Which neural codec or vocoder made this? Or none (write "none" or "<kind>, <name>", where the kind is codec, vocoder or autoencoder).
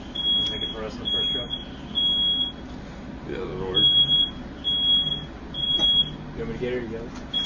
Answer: none